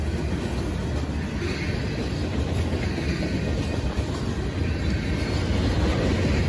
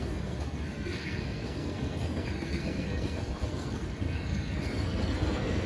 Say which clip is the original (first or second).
first